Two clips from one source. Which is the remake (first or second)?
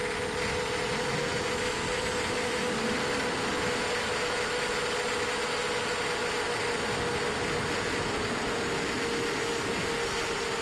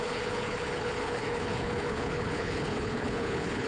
second